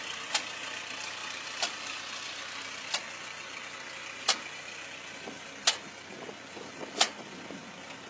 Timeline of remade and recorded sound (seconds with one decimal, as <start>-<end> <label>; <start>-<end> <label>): 0.0-8.1 recorded